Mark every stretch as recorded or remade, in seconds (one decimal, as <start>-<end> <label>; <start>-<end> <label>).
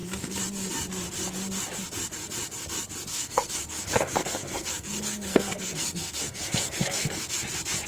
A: 0.0-3.1 recorded; 3.1-7.4 remade; 7.4-7.9 recorded